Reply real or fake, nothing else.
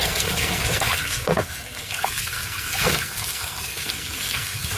fake